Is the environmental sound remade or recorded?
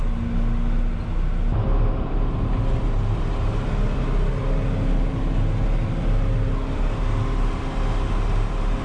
recorded